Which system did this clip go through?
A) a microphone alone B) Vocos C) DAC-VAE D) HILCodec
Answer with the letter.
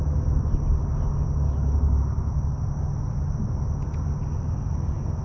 A